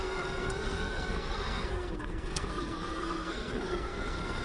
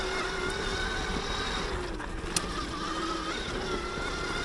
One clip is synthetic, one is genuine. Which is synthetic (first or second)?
first